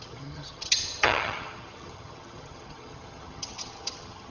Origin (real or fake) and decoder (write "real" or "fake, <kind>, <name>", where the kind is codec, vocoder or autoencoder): fake, vocoder, HiFi-GAN